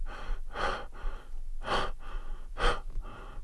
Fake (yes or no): no